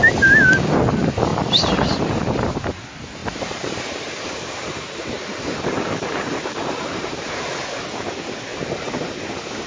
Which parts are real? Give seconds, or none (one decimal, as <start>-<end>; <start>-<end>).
0.0-3.2; 7.3-8.5; 9.2-9.7